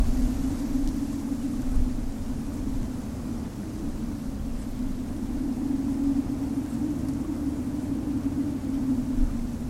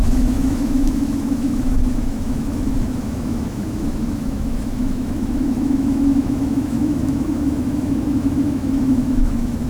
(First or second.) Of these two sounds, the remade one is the second